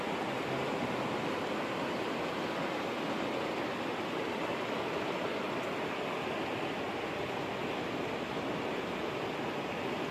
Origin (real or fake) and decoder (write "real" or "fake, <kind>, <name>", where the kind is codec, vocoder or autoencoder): real